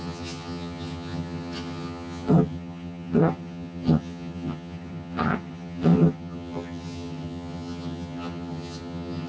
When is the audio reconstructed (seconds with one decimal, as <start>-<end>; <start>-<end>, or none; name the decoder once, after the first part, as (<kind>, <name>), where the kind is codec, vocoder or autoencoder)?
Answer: 0.0-9.3 (vocoder, HiFi-GAN)